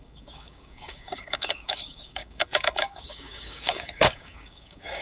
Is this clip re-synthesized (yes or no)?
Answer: yes